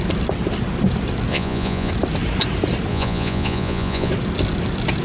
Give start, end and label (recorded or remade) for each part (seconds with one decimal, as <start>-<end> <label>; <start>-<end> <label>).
0.0-1.3 recorded; 1.3-1.9 remade; 1.9-2.9 recorded; 2.9-4.1 remade; 4.1-5.0 recorded